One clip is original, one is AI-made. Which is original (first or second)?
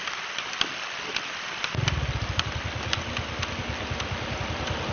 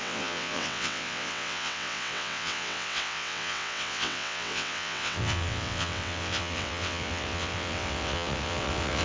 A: first